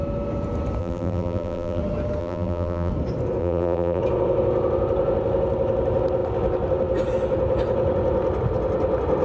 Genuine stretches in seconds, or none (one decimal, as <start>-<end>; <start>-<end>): 0.0-0.8; 1.8-2.2; 2.9-3.4; 4.0-9.2